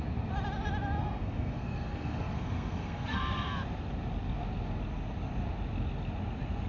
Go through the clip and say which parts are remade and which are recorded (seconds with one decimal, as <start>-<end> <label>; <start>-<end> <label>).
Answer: 0.0-1.0 recorded; 1.0-3.5 remade; 3.5-6.7 recorded